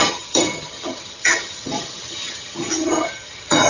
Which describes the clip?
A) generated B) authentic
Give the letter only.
A